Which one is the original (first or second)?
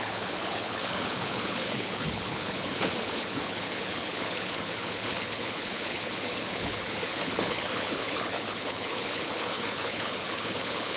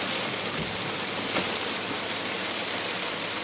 second